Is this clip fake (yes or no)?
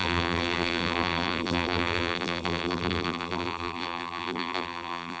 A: yes